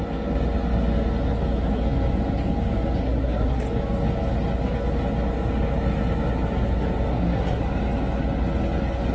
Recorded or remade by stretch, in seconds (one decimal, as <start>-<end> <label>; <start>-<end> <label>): 0.0-3.0 recorded; 3.0-3.6 remade; 3.6-7.1 recorded; 7.1-7.6 remade; 7.6-9.1 recorded